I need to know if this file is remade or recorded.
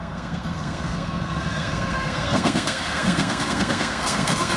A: remade